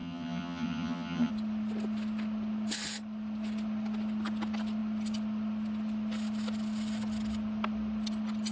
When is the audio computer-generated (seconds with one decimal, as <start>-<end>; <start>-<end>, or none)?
0.0-1.3

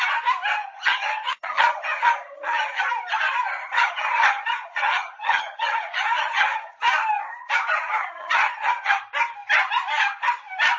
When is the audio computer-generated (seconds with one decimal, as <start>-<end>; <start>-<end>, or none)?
0.6-2.8; 3.6-6.8; 8.0-9.0

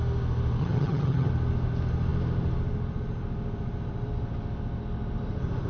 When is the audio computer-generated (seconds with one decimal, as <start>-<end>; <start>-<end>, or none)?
0.6-1.3

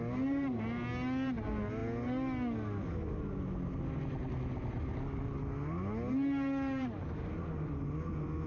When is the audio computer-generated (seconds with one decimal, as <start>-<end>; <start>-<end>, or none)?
none

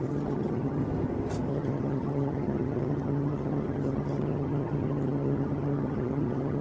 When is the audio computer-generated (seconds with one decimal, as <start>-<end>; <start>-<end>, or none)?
0.0-0.8; 1.5-6.6

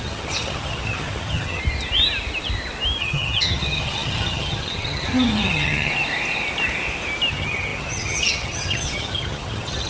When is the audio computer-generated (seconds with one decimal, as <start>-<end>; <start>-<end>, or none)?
0.0-1.6; 3.0-5.9; 7.3-9.9